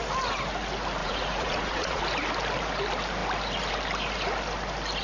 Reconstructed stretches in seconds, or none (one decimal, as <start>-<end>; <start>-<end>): 1.0-2.0